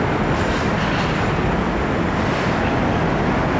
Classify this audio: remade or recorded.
recorded